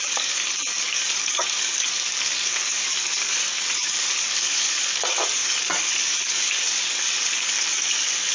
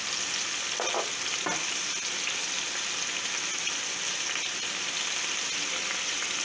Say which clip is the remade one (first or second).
first